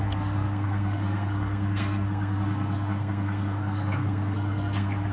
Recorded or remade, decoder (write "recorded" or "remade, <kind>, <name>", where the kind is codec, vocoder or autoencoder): remade, codec, SNAC